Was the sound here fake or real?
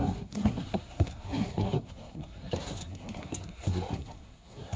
fake